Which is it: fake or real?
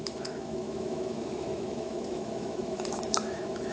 fake